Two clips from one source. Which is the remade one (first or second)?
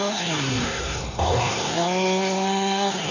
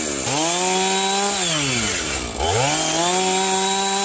first